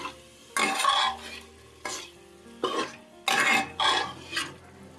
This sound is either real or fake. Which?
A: real